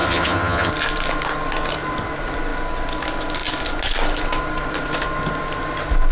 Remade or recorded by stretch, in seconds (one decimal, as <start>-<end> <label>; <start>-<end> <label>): 0.0-0.7 remade; 0.7-6.1 recorded